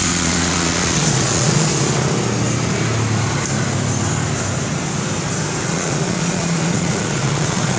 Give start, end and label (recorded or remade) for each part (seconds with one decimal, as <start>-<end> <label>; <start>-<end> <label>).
0.0-1.7 remade; 1.7-5.6 recorded; 5.6-7.8 remade